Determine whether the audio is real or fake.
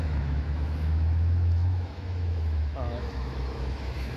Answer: fake